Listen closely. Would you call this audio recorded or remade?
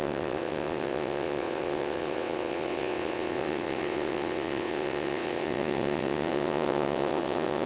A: remade